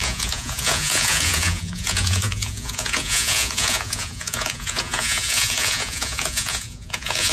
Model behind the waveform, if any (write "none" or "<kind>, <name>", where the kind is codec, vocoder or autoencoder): vocoder, Vocos